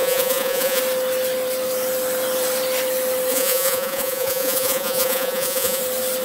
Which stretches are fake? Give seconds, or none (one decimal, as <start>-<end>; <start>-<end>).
0.0-0.8; 3.3-5.8

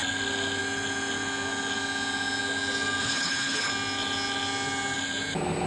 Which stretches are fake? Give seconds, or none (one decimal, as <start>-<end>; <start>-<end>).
3.0-3.7

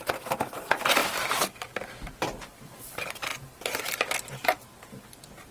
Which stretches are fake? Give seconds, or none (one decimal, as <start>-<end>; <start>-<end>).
0.0-1.0; 1.8-3.3; 4.9-5.5

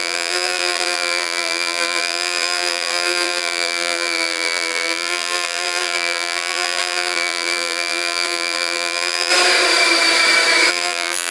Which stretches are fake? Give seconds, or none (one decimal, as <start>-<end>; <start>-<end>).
0.0-9.3; 10.7-11.3

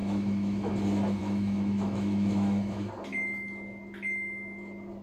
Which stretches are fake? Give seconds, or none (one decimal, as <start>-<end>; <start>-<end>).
0.0-0.7; 1.2-2.9

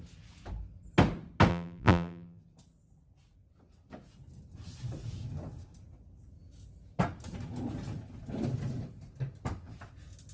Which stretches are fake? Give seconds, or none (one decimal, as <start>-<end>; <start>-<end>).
1.5-2.4